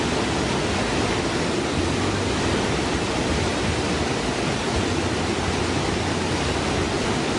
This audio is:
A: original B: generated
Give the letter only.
A